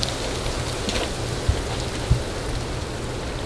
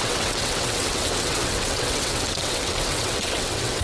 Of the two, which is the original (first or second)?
first